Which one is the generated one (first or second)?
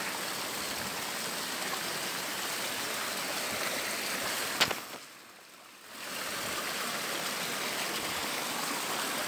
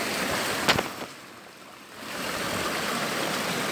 second